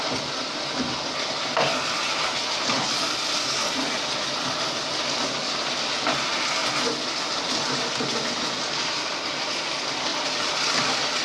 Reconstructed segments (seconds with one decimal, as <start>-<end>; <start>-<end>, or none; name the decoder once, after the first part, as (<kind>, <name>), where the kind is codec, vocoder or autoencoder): none